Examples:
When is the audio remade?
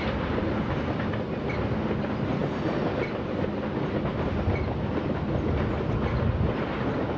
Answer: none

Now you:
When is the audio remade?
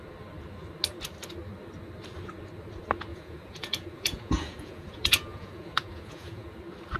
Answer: 3.1-6.6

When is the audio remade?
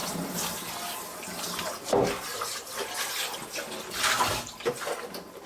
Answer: none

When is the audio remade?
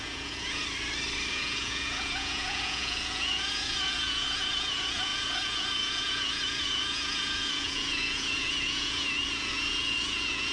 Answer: 0.0-0.6; 1.3-10.5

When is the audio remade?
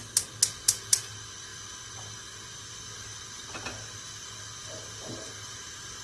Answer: none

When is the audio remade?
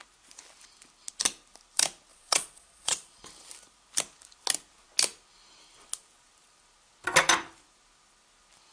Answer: 2.1-3.2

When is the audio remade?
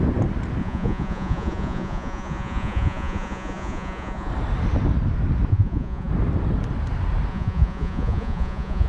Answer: 0.6-4.3; 5.5-6.1; 7.3-8.9